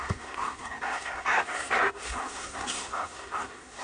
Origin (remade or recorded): remade